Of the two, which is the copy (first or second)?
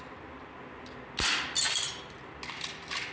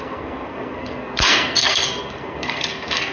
second